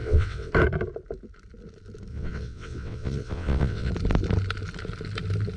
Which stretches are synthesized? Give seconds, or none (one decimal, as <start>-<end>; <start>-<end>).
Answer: 0.0-0.5; 2.1-3.9